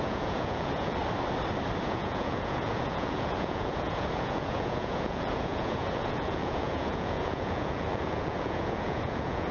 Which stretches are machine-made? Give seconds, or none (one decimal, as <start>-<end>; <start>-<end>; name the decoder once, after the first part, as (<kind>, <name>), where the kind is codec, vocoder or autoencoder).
0.0-1.0 (vocoder, Vocos); 1.8-9.5